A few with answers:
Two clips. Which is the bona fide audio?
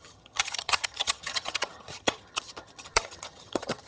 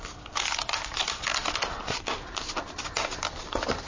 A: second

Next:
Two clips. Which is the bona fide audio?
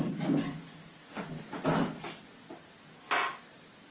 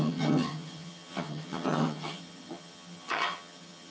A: first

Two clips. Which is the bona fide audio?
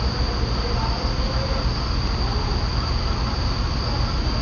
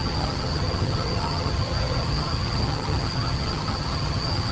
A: first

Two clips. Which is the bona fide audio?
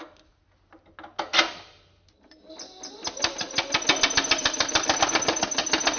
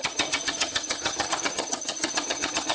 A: first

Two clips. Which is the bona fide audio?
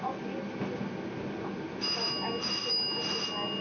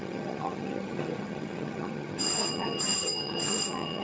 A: first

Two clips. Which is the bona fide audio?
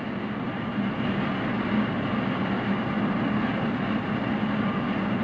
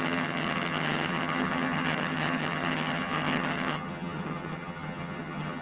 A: first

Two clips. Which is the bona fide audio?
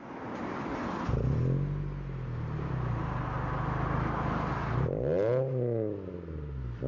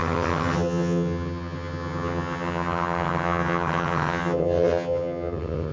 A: first